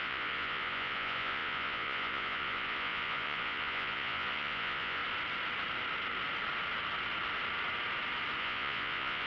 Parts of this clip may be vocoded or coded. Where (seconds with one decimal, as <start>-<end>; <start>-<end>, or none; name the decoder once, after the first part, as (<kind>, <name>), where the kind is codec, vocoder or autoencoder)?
0.0-5.0 (vocoder, Vocos); 8.4-9.3